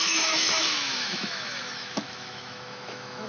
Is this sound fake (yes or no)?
yes